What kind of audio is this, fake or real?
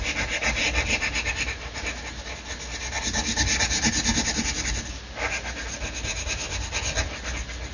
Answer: real